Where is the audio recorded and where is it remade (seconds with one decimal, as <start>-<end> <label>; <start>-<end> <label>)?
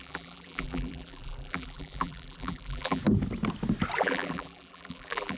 0.0-3.0 remade; 3.0-4.0 recorded; 4.0-5.4 remade